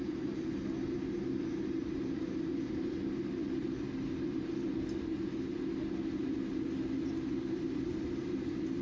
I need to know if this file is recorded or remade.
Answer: recorded